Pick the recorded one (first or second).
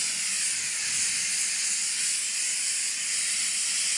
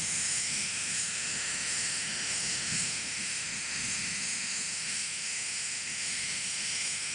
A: first